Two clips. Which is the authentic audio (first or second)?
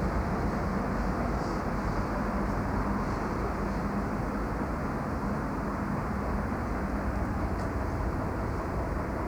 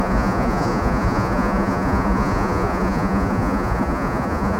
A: first